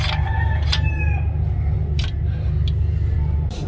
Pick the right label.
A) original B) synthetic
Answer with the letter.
A